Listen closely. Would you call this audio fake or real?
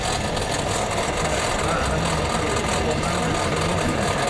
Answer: real